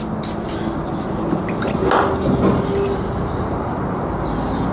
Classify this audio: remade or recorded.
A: recorded